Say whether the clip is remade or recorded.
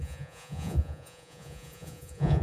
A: remade